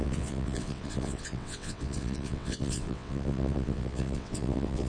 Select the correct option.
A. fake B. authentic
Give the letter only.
A